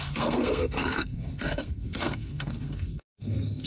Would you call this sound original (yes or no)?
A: no